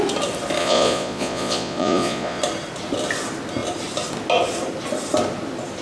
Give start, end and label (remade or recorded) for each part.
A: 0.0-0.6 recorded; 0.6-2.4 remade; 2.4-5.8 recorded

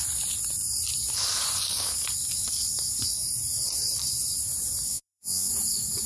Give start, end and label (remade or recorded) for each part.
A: 0.0-4.9 recorded; 4.9-5.5 remade; 5.5-6.1 recorded

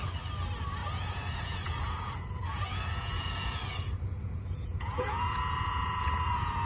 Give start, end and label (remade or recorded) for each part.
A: 0.0-0.8 recorded; 0.8-3.6 remade; 3.6-4.0 recorded; 4.0-6.7 remade